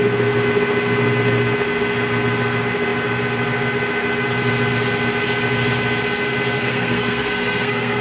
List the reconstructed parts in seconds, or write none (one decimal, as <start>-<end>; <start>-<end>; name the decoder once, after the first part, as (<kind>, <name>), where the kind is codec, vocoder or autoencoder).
6.6-8.0 (codec, SNAC)